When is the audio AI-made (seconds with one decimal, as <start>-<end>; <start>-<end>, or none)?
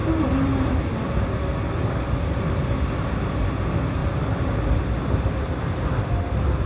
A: none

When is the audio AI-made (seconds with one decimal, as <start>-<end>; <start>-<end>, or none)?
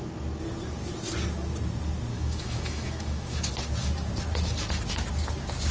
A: 2.1-3.5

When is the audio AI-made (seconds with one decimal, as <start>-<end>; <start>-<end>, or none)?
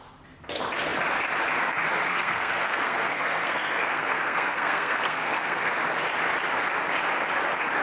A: 2.1-5.7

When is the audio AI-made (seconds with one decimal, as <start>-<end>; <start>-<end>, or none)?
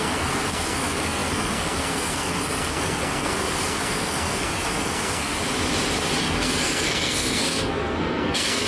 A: 0.0-5.3; 6.2-8.7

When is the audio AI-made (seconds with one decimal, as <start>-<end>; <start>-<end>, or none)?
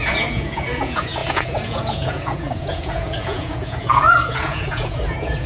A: 0.0-5.5